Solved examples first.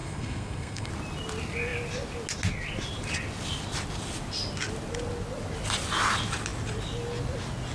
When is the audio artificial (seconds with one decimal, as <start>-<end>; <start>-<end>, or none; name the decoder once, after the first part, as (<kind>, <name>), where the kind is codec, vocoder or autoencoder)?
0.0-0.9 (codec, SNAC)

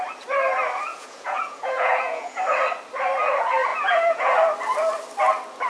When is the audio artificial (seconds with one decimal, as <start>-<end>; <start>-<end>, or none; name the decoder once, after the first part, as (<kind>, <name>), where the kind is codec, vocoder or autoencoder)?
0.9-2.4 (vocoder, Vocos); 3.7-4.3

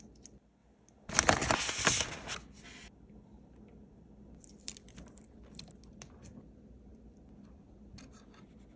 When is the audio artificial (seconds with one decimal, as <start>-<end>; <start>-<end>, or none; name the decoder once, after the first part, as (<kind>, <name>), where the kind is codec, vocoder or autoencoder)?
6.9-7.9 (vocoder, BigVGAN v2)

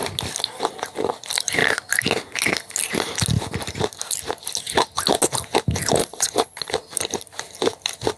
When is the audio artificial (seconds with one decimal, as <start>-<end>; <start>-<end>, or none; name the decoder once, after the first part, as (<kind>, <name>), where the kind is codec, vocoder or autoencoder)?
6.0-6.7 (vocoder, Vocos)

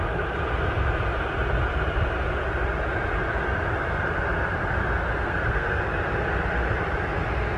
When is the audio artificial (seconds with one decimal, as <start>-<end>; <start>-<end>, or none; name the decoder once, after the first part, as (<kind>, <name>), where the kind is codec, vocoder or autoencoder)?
5.2-5.8 (codec, SNAC)

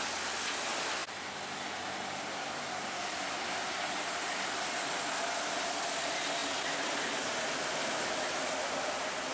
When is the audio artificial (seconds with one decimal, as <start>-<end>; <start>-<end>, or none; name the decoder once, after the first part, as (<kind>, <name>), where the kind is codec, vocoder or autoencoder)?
none